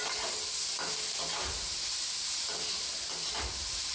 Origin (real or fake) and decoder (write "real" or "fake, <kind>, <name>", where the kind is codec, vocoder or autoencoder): real